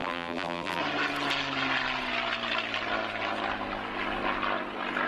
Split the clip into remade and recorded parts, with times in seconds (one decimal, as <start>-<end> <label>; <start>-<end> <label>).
0.0-0.8 remade; 0.8-5.1 recorded